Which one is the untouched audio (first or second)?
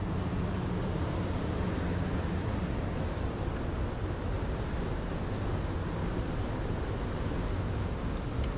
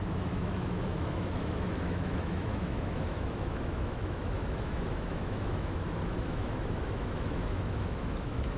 first